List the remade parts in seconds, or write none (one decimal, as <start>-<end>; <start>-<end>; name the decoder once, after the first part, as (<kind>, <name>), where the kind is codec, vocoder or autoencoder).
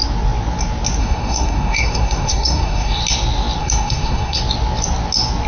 1.0-3.0 (codec, SNAC); 3.6-4.4